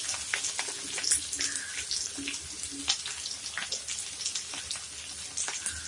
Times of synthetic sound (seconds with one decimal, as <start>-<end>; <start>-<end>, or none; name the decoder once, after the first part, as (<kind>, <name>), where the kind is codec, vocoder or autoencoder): none